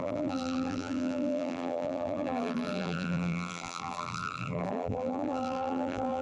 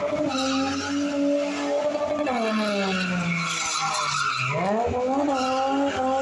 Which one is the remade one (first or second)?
first